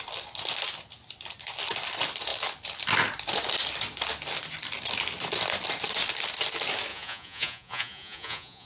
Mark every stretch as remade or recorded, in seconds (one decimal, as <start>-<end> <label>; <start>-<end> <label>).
0.0-6.9 recorded; 6.9-8.7 remade